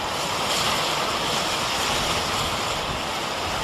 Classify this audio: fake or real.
real